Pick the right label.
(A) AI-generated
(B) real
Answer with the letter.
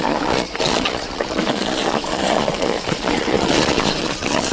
A